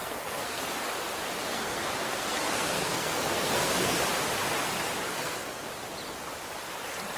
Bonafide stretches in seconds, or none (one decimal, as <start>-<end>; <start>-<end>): 0.6-1.5; 4.0-5.1; 5.7-7.2